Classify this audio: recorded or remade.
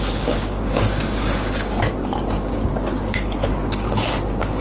remade